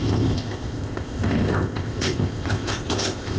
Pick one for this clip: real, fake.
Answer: fake